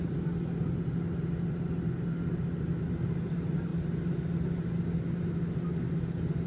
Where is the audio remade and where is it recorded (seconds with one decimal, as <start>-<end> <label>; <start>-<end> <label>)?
0.0-6.5 recorded